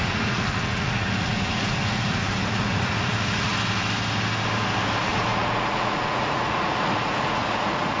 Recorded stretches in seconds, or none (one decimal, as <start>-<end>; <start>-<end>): 3.5-5.0